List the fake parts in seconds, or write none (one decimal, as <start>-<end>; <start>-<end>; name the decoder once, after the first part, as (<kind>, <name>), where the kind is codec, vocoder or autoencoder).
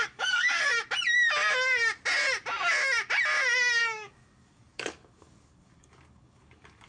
0.0-0.7 (codec, DAC); 3.8-6.9